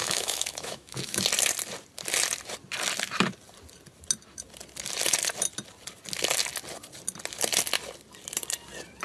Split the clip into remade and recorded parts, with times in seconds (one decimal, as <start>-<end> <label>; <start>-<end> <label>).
0.0-1.2 remade; 1.2-9.0 recorded